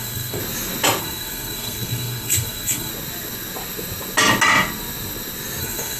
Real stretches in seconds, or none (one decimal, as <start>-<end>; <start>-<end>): 0.4-1.0; 2.9-5.6